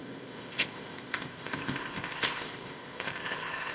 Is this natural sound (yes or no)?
no